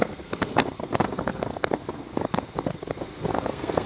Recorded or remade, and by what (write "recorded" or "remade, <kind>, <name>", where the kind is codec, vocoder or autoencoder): remade, codec, SNAC